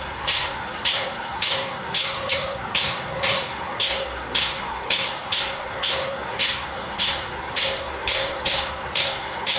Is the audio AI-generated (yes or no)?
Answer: yes